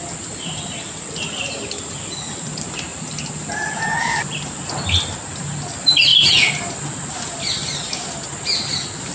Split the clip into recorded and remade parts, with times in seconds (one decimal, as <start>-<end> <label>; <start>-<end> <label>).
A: 0.0-9.1 recorded